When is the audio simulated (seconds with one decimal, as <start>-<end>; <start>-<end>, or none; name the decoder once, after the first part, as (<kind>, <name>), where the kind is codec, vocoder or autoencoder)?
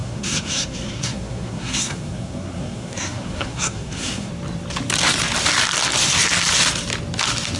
0.0-4.3 (codec, SNAC)